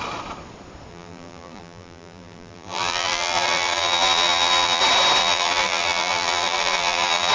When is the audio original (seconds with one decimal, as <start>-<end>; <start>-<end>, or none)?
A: 0.0-0.9; 4.8-5.2